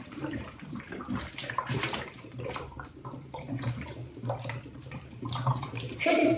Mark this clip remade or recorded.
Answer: remade